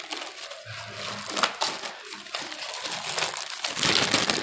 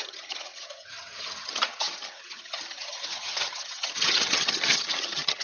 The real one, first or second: first